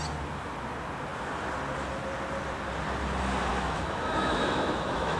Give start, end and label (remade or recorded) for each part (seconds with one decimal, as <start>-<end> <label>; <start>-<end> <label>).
0.0-3.5 recorded; 3.5-5.2 remade